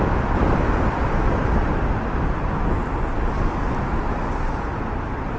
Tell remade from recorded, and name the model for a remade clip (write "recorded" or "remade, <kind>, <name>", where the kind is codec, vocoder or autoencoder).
recorded